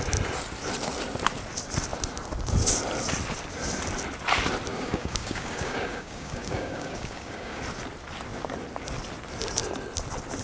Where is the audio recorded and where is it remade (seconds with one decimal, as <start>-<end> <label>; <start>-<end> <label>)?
0.0-4.7 recorded; 4.7-7.6 remade; 7.6-10.4 recorded